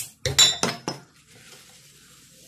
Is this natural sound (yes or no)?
yes